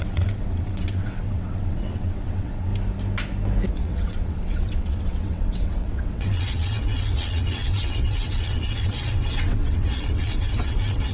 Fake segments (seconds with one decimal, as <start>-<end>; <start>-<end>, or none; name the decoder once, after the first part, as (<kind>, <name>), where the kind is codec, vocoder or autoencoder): 0.0-2.7 (vocoder, WaveNeXt); 3.7-11.1